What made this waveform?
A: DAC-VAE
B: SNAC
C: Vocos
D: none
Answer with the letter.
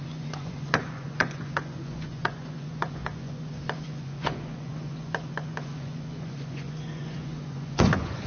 C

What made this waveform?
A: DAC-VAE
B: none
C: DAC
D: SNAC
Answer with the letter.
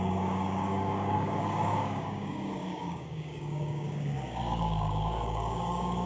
C